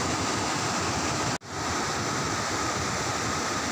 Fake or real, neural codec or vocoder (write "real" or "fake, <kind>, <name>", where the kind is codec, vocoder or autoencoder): real